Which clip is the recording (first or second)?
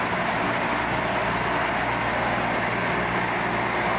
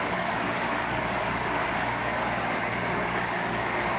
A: first